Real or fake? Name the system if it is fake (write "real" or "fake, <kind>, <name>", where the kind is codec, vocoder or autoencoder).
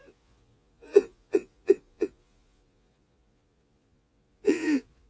fake, vocoder, Vocos